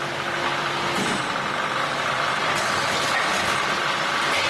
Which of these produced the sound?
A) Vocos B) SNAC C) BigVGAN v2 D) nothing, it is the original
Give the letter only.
D